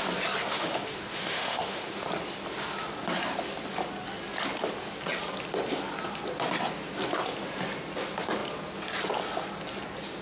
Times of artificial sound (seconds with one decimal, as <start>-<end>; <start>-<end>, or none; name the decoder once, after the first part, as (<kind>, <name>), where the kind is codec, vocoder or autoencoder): 0.4-2.1 (autoencoder, DAC-VAE)